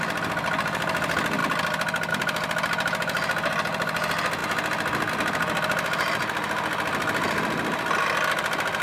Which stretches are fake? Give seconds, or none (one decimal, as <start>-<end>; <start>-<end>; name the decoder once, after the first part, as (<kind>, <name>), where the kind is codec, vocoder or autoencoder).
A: none